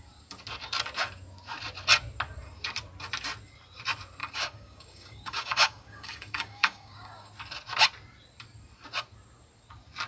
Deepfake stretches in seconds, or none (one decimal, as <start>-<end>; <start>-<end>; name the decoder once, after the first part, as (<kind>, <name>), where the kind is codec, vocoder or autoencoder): 4.2-7.3 (codec, DAC)